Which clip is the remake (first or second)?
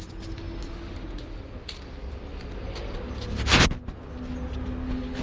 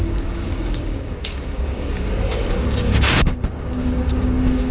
second